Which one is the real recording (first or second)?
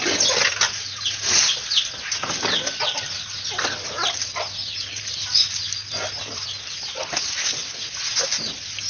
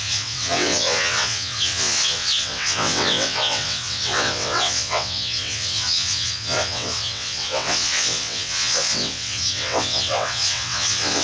first